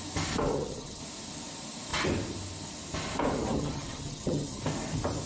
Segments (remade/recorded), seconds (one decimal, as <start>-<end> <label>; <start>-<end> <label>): 0.0-0.5 recorded; 0.5-1.0 remade; 1.0-3.4 recorded; 3.4-4.6 remade; 4.6-5.3 recorded